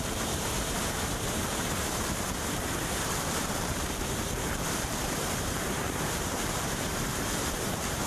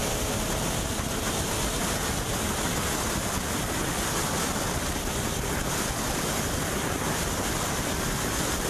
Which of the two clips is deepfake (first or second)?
first